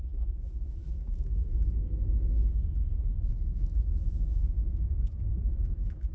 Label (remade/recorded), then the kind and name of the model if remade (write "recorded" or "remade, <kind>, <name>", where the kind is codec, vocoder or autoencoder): remade, autoencoder, DAC-VAE